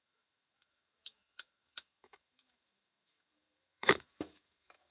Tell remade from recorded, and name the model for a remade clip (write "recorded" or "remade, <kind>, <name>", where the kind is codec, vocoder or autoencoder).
remade, autoencoder, DAC-VAE